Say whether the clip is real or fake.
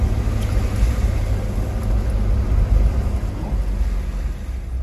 real